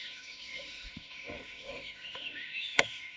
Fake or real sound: fake